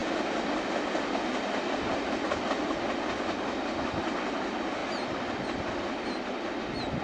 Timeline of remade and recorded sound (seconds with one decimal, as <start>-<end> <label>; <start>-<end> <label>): 0.0-7.0 recorded